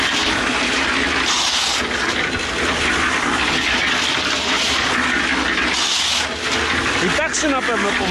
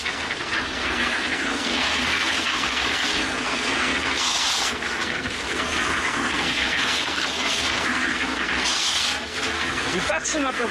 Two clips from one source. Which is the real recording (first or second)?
first